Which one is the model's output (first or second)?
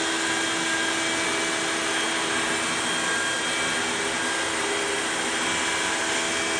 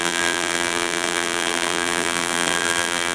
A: second